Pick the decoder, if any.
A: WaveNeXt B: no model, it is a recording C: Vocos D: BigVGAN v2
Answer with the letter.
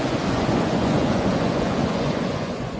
C